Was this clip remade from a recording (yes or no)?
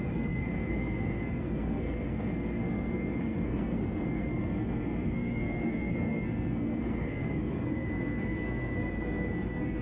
yes